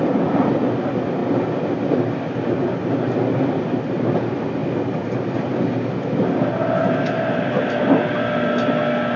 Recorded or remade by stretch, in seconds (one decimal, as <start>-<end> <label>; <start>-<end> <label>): 0.0-9.2 recorded